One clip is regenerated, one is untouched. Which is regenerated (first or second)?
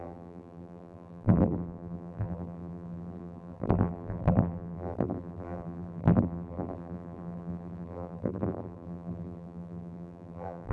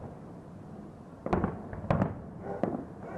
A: first